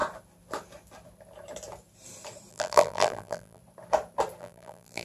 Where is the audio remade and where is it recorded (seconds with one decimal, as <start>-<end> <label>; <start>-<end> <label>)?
0.0-2.5 recorded; 2.5-3.6 remade; 3.6-4.4 recorded; 4.4-5.0 remade